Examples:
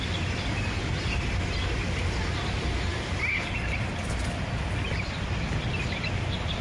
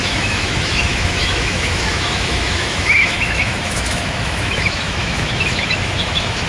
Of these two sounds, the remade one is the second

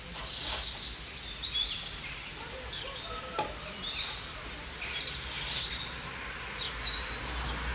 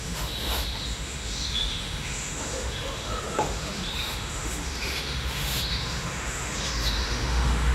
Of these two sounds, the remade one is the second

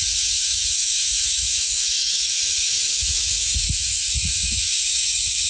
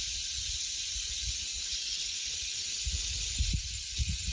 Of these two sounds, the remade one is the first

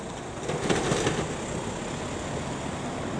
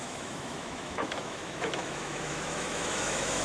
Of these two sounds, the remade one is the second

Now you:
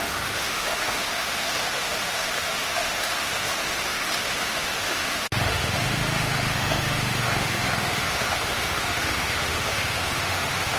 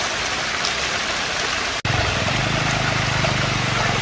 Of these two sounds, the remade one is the first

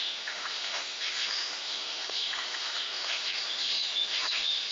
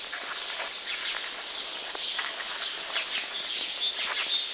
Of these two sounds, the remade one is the first